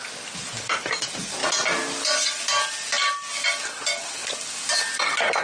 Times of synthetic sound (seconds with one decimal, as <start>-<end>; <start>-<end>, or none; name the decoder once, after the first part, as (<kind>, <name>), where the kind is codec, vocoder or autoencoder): none